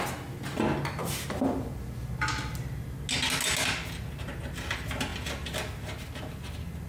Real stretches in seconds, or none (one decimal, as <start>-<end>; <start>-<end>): 0.0-6.9